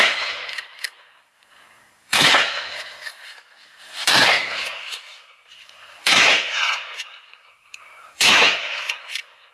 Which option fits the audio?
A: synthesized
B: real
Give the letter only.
A